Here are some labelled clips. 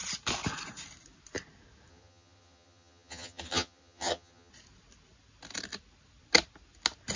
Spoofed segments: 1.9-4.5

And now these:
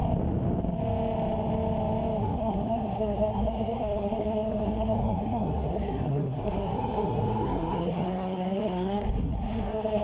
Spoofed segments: 2.2-10.0

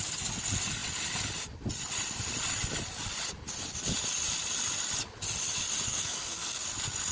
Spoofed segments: 5.9-6.6